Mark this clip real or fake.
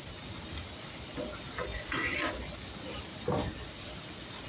real